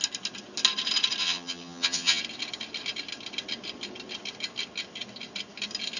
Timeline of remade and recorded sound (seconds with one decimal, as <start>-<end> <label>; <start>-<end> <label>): 0.0-1.2 recorded; 1.2-2.2 remade; 2.2-6.0 recorded